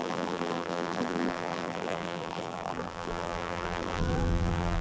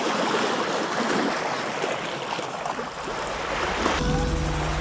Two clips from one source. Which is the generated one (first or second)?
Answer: first